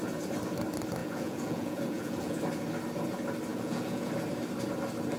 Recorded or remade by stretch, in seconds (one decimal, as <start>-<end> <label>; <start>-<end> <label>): 0.0-1.0 recorded; 1.0-2.4 remade; 2.4-3.5 recorded; 3.5-4.1 remade; 4.1-5.2 recorded